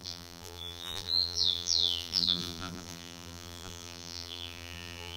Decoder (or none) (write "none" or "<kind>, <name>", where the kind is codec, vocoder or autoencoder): vocoder, BigVGAN v2